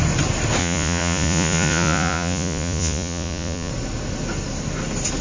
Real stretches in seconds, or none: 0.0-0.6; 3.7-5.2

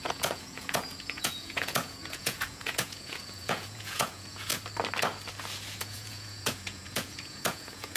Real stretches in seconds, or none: 4.5-5.8

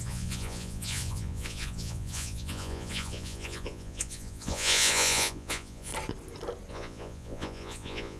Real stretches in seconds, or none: 5.9-6.7

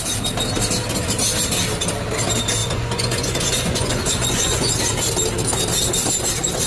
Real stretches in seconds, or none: 0.0-2.6; 4.7-6.7

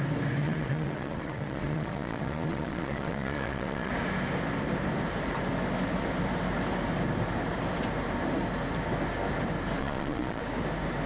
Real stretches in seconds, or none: 0.0-0.4; 3.9-9.8; 10.4-11.1